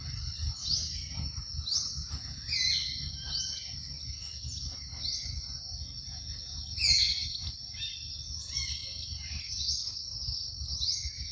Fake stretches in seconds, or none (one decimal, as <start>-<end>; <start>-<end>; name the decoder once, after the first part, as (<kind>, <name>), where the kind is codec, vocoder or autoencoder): 0.4-1.4 (vocoder, BigVGAN v2); 7.1-7.8